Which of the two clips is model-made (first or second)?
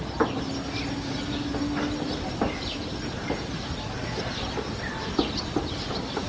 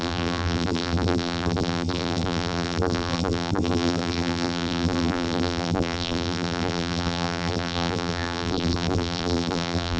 second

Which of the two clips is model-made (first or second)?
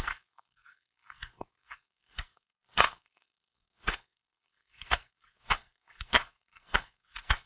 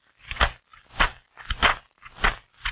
first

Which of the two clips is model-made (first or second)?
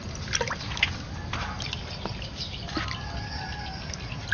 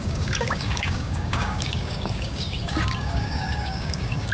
second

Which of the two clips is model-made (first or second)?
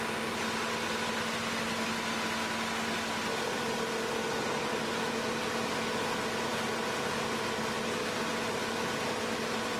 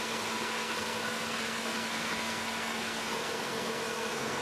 second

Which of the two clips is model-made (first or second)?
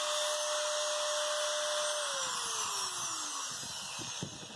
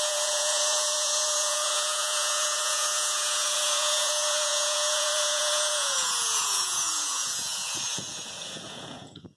second